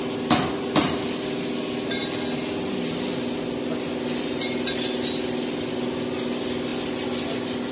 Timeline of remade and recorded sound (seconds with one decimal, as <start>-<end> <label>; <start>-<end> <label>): 0.0-7.7 recorded